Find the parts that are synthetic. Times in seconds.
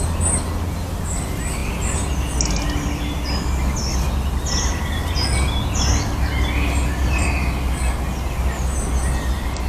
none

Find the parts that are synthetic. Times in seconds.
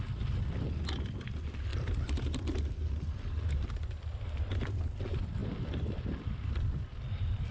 1.7-4.0 (vocoder, BigVGAN v2); 5.4-6.9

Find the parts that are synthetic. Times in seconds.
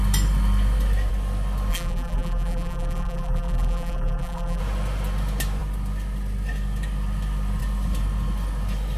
1.7-4.6 (vocoder, BigVGAN v2)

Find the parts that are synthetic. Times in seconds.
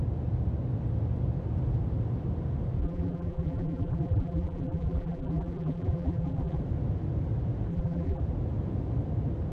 2.8-6.6 (vocoder, BigVGAN v2); 7.7-8.2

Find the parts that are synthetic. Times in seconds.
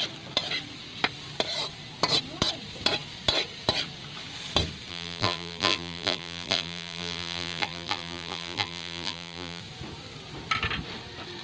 4.9-9.6 (vocoder, BigVGAN v2)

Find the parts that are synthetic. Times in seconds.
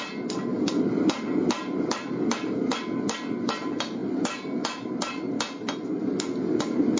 0.5-2.8 (vocoder, BigVGAN v2); 4.0-4.9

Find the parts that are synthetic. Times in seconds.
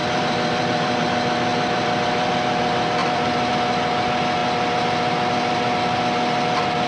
0.0-1.0 (vocoder, BigVGAN v2); 1.5-2.3; 3.0-3.5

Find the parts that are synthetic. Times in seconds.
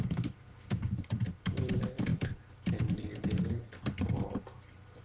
0.0-5.0 (vocoder, BigVGAN v2)